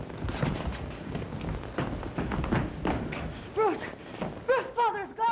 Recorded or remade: recorded